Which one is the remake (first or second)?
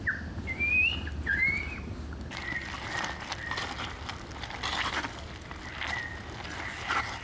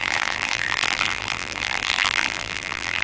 second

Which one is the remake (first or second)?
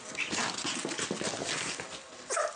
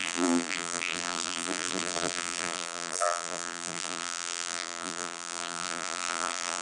second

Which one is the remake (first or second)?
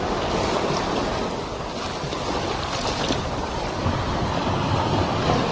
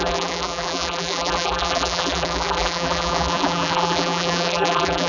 second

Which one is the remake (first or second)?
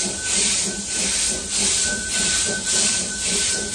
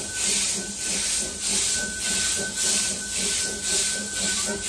first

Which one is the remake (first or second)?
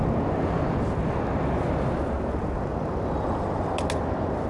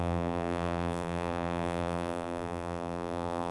second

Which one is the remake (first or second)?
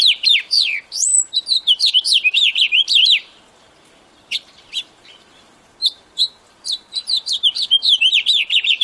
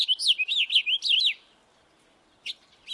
first